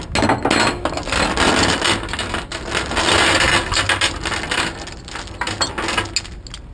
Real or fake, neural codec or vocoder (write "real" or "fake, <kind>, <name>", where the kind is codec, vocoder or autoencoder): real